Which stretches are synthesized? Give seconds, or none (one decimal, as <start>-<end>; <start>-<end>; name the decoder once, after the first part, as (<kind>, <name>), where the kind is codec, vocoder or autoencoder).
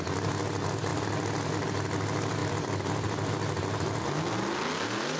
none